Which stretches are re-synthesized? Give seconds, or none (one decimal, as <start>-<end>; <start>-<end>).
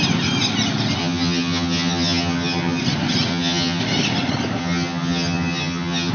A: 1.0-2.8; 3.3-3.8; 4.6-6.1